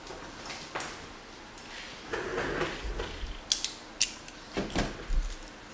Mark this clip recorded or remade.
recorded